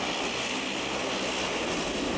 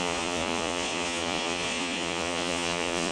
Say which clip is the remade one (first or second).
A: second